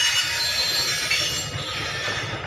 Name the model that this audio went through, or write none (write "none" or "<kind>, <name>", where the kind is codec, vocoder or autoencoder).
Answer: none